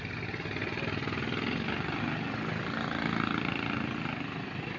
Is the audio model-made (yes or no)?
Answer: no